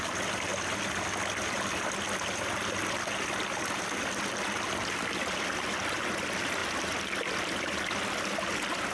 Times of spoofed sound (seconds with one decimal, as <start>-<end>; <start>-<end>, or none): none